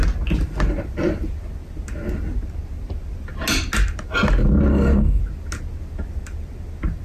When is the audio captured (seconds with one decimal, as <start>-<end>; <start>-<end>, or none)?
0.0-4.7; 5.2-7.0

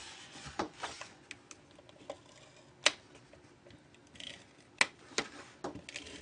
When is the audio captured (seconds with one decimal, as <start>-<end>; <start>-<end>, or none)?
1.3-6.2

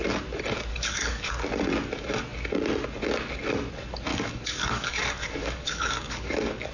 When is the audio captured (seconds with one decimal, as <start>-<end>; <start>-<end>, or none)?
0.0-0.7; 1.3-4.1

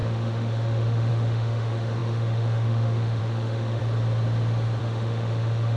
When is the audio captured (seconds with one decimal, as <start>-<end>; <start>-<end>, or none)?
3.8-4.8

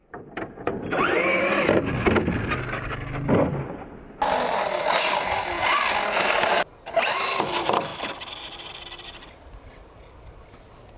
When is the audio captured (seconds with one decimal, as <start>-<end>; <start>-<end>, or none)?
0.0-11.0

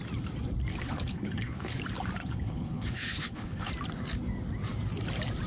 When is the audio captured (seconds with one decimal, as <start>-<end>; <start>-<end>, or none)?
0.0-0.7; 1.8-2.2; 3.7-5.5